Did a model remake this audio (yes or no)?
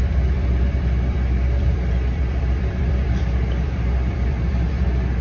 yes